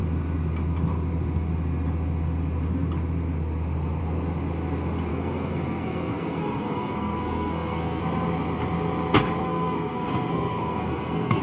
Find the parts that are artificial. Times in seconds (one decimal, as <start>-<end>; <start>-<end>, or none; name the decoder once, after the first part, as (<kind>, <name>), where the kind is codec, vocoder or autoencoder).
5.1-8.0 (codec, SNAC); 9.4-11.4